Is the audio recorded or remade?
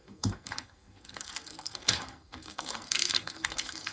remade